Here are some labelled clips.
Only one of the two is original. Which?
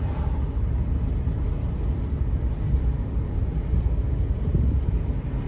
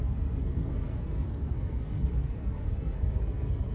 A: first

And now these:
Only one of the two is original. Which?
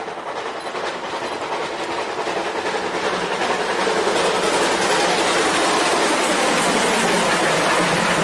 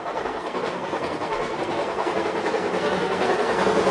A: first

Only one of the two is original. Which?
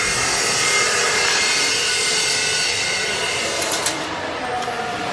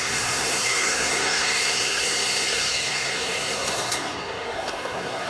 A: first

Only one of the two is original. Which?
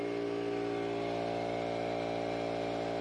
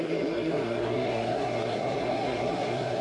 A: first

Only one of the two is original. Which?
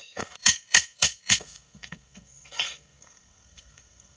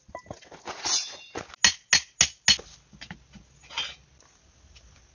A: second